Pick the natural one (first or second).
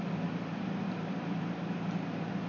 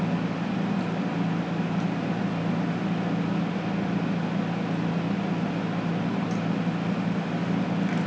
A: second